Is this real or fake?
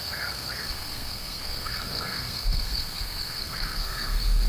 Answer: fake